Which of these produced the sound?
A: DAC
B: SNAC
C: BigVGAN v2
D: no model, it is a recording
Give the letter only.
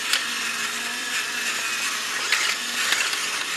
C